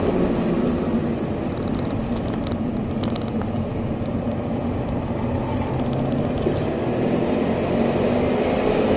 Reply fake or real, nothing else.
real